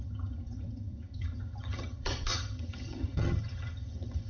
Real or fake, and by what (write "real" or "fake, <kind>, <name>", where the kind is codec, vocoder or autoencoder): fake, vocoder, HiFi-GAN